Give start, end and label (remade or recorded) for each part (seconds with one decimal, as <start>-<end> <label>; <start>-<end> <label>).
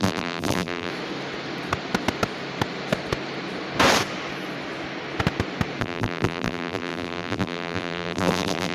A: 0.0-0.9 remade; 0.9-5.8 recorded; 5.8-8.7 remade